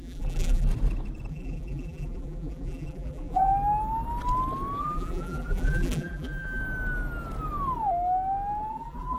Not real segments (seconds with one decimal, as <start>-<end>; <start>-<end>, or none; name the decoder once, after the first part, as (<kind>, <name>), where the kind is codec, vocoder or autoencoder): 0.0-0.7 (vocoder, BigVGAN v2); 1.3-3.5; 4.8-6.6; 8.7-9.2